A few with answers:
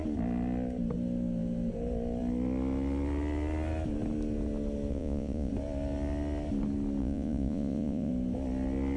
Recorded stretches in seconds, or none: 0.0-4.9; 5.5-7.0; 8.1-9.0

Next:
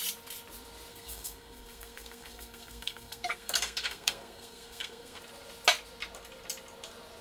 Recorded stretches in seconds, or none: 0.0-0.9; 5.2-7.2

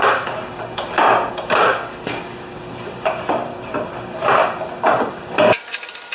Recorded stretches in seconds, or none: 1.7-3.6; 4.4-5.2

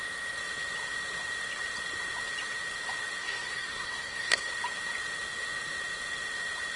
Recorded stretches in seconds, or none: 0.0-3.2; 4.5-6.8